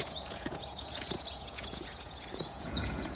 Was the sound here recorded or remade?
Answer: remade